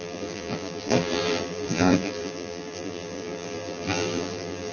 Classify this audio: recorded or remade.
remade